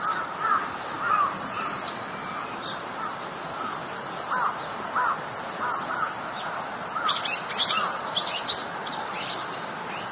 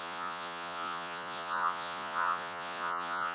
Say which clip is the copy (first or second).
second